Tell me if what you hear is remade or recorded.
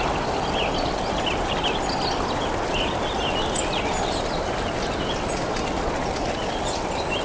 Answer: recorded